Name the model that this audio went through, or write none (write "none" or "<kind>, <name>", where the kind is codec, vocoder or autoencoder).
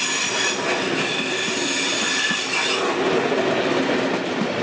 none